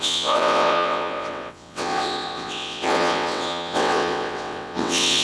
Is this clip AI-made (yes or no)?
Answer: yes